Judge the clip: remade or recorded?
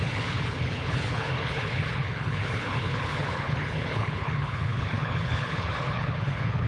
remade